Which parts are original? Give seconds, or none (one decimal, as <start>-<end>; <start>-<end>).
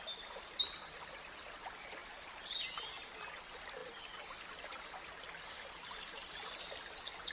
0.0-7.3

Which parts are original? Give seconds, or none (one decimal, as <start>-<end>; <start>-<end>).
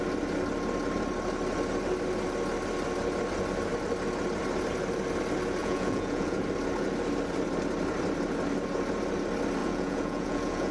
0.0-5.6; 6.4-9.6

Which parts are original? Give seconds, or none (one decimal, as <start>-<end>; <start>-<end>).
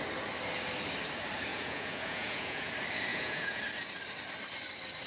0.0-1.5; 2.7-3.1; 3.6-5.1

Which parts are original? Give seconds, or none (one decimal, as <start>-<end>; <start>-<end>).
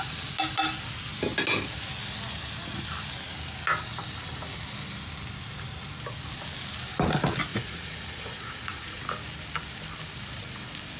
0.0-7.5; 9.0-11.0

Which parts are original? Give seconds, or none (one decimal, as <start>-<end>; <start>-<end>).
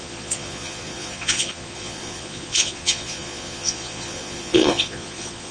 none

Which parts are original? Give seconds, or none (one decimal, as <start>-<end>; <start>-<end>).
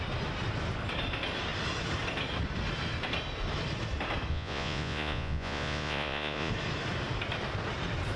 0.0-4.3; 6.5-8.2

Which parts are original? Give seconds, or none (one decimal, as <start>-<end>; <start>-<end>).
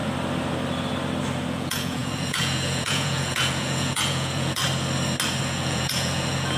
0.0-1.5; 4.6-5.4